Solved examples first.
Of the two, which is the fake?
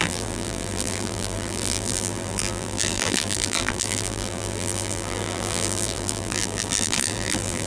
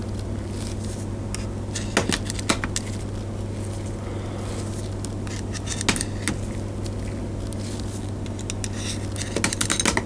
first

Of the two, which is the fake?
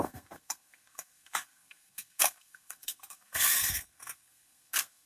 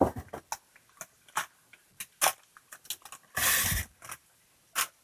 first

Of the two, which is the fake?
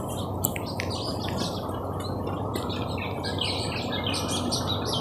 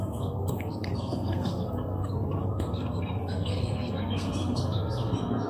second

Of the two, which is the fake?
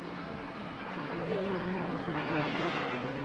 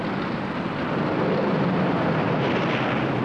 first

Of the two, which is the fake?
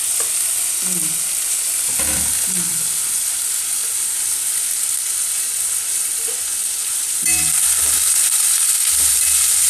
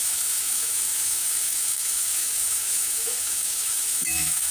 second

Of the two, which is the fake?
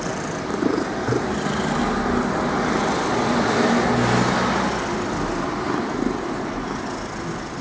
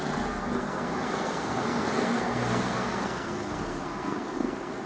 second